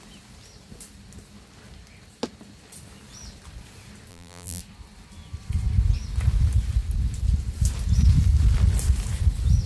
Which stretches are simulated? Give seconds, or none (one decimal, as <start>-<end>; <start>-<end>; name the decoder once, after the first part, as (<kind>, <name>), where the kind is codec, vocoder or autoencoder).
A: 4.1-4.6 (vocoder, BigVGAN v2)